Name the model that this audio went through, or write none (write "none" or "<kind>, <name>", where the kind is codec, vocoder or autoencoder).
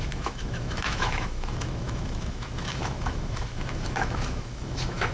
autoencoder, DAC-VAE